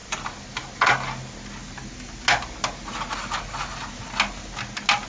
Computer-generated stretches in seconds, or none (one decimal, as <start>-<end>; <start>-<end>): none